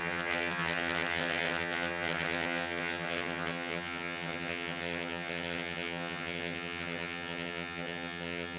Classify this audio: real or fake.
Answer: fake